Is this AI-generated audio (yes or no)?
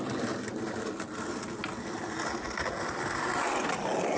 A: no